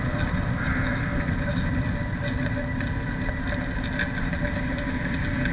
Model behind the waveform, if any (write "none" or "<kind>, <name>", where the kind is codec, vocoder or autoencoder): none